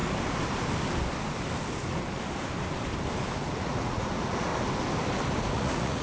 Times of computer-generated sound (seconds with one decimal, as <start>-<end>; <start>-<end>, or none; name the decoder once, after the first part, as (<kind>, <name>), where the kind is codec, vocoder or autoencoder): 3.6-4.5 (vocoder, Vocos); 5.5-6.0